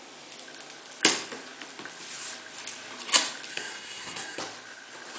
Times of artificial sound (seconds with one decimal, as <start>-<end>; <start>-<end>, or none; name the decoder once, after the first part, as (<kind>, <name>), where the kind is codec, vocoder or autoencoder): 3.5-4.4 (codec, SNAC)

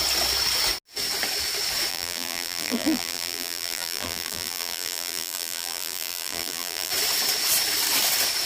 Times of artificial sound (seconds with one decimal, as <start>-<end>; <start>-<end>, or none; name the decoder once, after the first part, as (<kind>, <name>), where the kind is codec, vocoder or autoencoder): 1.9-6.9 (vocoder, BigVGAN v2)

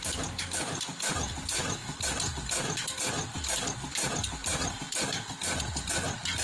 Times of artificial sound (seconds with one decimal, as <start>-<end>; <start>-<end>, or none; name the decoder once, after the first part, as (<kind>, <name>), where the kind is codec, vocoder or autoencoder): none

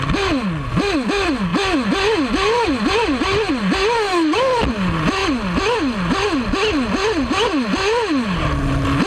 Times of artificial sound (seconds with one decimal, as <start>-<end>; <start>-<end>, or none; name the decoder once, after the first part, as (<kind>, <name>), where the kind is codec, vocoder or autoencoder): none

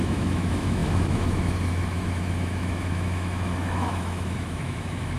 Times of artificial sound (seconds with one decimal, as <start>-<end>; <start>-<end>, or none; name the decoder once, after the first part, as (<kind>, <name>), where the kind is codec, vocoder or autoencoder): 0.0-5.2 (autoencoder, DAC-VAE)

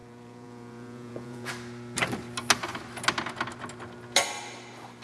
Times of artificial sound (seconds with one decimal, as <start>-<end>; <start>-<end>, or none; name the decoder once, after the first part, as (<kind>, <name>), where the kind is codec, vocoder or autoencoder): 0.0-1.5 (vocoder, Vocos)

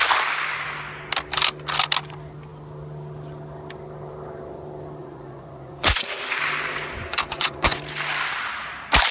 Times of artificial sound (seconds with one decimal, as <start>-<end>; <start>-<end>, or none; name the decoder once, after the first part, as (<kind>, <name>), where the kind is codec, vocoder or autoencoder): 5.0-6.1 (vocoder, Vocos); 7.0-7.8

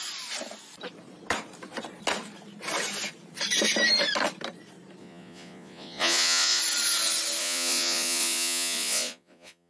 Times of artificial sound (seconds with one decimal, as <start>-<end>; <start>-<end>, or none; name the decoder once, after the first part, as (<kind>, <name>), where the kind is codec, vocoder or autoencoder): 5.0-6.6 (vocoder, Vocos); 7.4-9.7